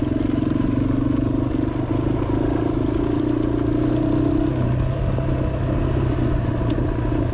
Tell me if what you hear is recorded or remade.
recorded